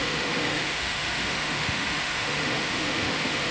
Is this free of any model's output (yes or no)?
no